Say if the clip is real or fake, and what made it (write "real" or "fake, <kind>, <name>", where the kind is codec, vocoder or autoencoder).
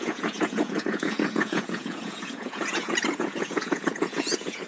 fake, vocoder, Vocos